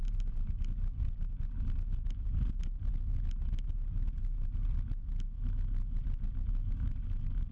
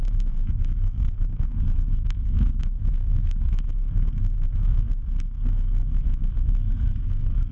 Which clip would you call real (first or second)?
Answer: first